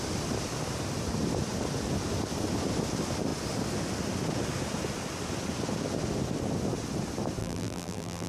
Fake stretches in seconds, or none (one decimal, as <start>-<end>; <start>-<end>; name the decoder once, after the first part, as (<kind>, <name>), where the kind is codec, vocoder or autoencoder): 7.4-8.3 (vocoder, BigVGAN v2)